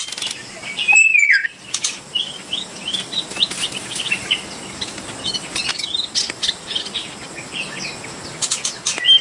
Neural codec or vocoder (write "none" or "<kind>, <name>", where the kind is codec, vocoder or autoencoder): none